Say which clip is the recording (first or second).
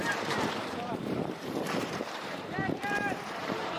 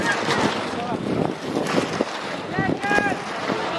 second